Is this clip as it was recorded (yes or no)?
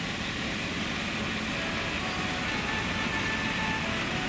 yes